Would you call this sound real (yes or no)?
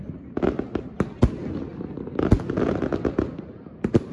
yes